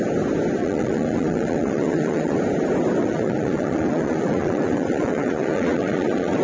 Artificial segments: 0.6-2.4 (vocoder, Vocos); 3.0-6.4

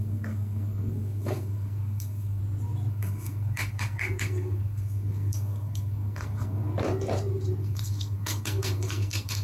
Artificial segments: 0.0-2.4 (codec, SNAC); 2.9-6.7; 7.6-9.4

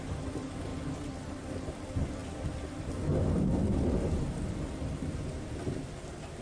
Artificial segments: none

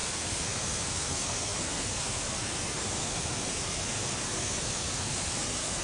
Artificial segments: 0.0-5.8 (codec, SNAC)

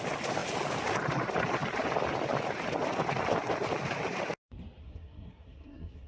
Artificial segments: 4.8-6.1 (codec, SNAC)

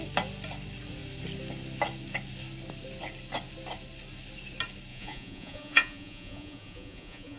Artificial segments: 4.9-7.4 (vocoder, Vocos)

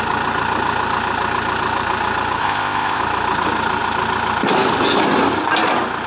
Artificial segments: 2.4-3.0 (codec, ZipCodec)

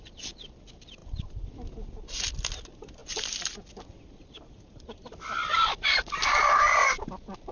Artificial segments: none